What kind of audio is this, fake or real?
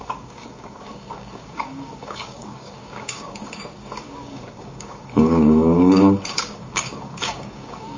fake